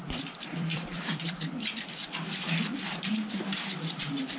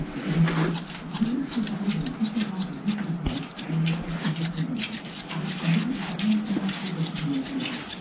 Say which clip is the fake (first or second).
first